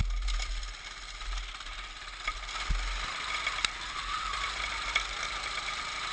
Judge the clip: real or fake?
real